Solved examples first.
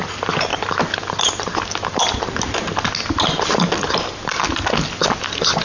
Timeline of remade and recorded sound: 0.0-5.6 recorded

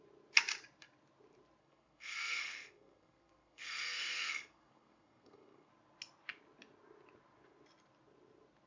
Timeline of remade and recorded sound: 0.0-1.6 recorded; 1.6-5.7 remade; 5.7-8.7 recorded

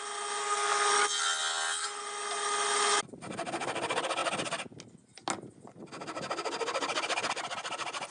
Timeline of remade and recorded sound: 0.0-0.4 recorded; 0.4-0.9 remade; 0.9-8.1 recorded

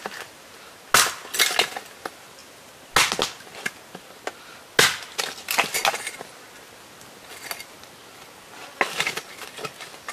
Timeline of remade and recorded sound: 0.0-10.1 recorded

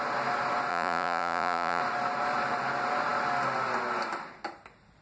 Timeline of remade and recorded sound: 0.0-0.7 recorded; 0.7-1.8 remade; 1.8-5.0 recorded

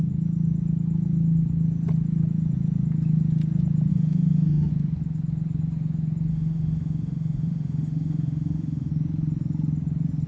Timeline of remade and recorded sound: 0.0-3.9 recorded; 3.9-4.7 remade; 4.7-6.3 recorded; 6.3-8.9 remade; 8.9-10.3 recorded